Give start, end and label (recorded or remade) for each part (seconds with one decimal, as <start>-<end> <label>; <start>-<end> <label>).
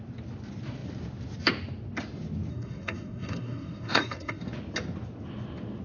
0.0-2.5 recorded; 2.5-4.4 remade; 4.4-5.8 recorded